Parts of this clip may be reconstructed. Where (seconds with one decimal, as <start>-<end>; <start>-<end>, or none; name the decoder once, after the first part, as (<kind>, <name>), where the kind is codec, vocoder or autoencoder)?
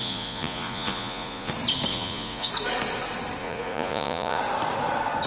0.0-1.5 (vocoder, Vocos); 1.9-2.5; 3.4-4.4